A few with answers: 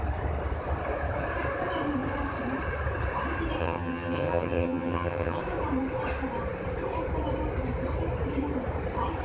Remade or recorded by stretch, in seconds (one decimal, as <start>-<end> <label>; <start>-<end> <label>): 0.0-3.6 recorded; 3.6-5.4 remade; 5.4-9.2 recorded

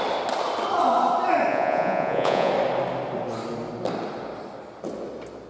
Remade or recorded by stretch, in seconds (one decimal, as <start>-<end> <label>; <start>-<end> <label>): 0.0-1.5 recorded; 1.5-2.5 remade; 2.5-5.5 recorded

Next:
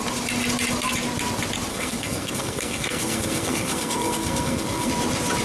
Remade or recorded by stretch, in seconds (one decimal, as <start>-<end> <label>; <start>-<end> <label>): 0.0-1.7 recorded; 1.7-4.9 remade; 4.9-5.4 recorded

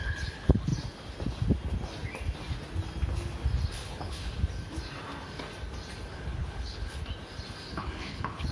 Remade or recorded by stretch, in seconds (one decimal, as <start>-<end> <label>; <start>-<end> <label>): 0.0-0.7 remade; 0.7-3.7 recorded; 3.7-4.3 remade; 4.3-6.1 recorded; 6.1-7.0 remade; 7.0-7.7 recorded; 7.7-8.5 remade